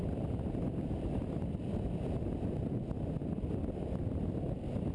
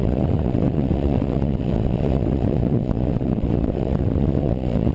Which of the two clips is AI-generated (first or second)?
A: second